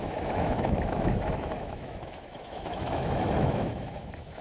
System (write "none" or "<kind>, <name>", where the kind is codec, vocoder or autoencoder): autoencoder, DAC-VAE